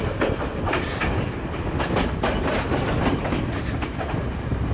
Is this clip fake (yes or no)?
no